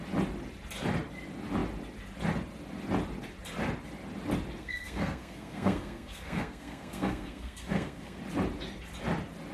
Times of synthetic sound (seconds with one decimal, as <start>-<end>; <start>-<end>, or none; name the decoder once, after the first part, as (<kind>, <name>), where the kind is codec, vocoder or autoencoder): 4.6-8.2 (codec, SNAC)